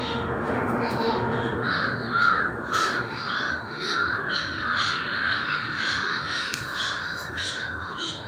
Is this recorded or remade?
remade